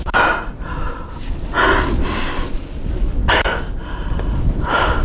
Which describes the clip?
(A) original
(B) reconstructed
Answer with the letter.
A